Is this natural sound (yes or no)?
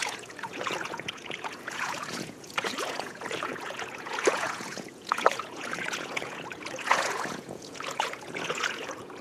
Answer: no